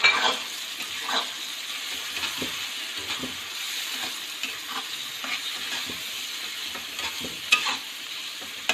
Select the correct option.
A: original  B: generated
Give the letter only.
A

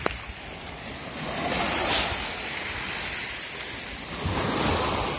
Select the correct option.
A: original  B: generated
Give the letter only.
A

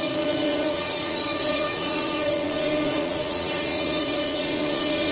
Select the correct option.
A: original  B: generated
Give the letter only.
B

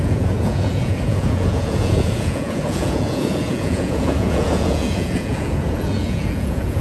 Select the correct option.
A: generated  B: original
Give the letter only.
A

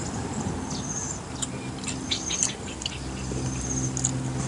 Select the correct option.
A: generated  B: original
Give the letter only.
B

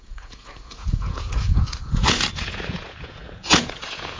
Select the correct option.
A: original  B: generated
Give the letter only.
B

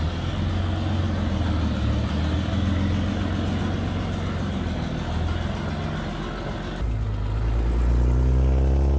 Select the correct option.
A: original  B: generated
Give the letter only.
A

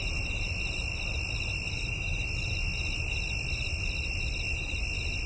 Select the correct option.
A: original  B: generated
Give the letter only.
A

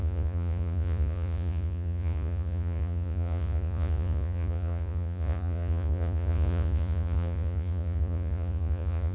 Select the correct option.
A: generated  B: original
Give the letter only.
A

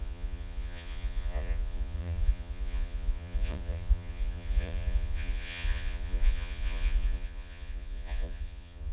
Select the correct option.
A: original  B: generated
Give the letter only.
B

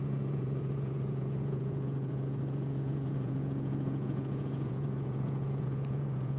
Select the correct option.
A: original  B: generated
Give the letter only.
B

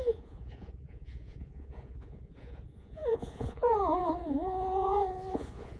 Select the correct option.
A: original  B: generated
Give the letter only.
B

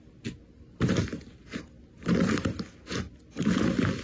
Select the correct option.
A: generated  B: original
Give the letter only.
B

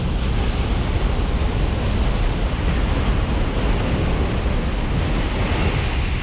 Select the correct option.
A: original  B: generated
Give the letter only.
A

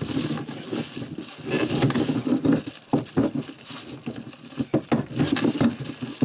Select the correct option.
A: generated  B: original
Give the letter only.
B